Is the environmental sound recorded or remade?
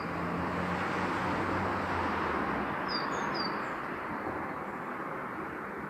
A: recorded